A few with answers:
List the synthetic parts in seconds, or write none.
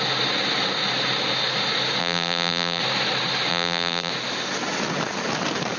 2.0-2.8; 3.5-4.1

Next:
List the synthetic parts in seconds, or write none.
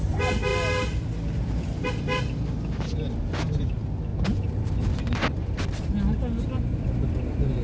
4.1-5.9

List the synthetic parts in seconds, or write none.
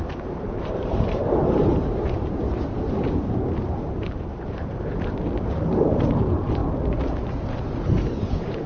0.0-6.6; 7.6-8.7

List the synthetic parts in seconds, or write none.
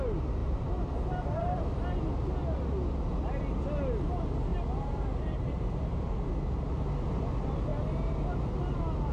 0.4-1.7; 4.5-6.3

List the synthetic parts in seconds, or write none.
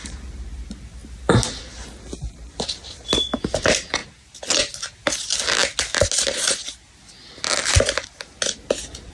none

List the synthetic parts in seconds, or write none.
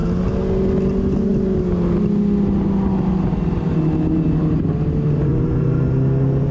none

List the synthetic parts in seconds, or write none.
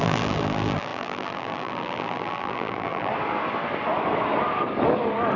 0.0-3.1